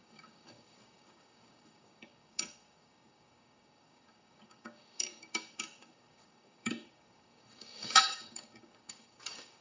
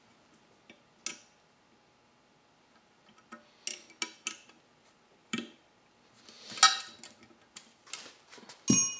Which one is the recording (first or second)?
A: second